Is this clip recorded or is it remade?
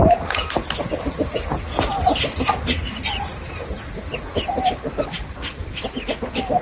recorded